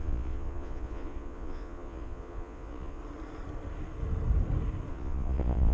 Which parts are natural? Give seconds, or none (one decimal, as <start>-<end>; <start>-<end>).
3.0-4.9